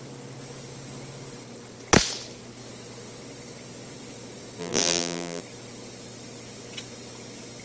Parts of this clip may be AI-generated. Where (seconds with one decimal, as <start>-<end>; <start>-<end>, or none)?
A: 4.6-5.4